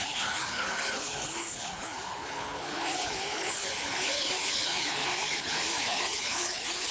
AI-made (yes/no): yes